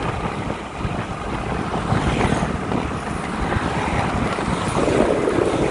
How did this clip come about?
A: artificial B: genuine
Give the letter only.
B